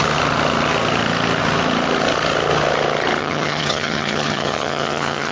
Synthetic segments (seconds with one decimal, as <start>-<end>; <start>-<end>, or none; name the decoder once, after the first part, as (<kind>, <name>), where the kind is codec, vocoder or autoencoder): 3.2-5.3 (vocoder, HiFi-GAN)